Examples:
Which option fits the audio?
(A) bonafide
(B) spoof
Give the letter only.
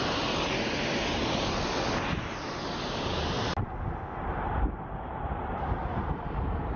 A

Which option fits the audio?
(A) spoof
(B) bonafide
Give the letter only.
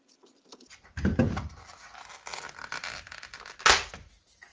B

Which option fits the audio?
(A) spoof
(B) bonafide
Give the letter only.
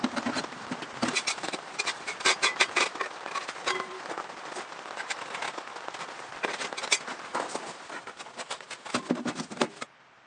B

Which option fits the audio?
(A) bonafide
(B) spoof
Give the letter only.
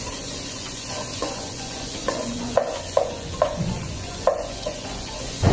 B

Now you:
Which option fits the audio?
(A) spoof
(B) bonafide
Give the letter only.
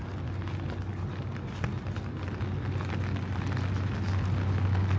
B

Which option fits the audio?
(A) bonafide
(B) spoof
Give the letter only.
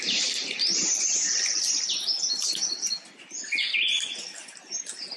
A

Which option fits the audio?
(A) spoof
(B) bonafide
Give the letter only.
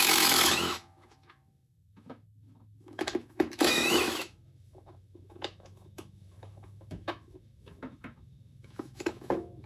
A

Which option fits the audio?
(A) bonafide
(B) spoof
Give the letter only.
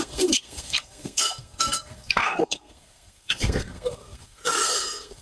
B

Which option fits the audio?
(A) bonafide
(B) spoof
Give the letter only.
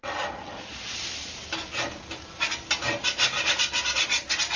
A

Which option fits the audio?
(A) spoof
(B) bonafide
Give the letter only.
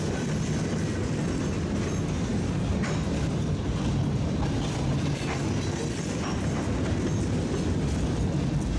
B